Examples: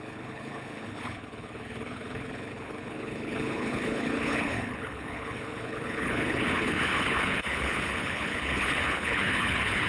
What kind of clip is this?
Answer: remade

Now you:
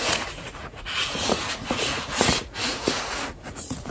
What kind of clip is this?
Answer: remade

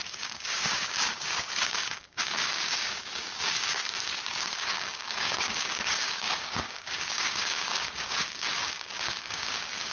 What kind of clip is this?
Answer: remade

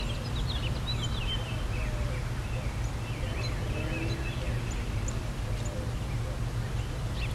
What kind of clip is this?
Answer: recorded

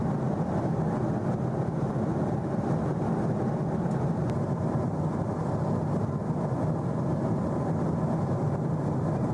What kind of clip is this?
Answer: recorded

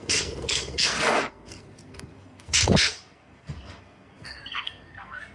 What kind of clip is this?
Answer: remade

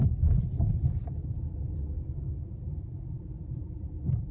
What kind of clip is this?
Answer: remade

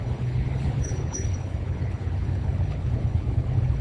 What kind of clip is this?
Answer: remade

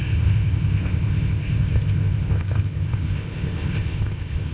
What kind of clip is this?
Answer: remade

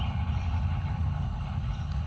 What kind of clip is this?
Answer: remade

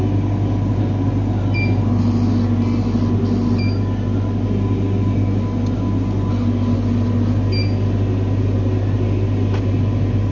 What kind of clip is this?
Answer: recorded